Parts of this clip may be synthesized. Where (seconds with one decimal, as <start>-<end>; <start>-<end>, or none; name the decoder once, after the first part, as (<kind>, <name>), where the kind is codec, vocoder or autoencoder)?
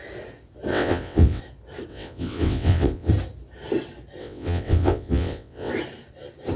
0.7-1.4 (vocoder, WaveNeXt); 1.9-3.1; 4.2-5.7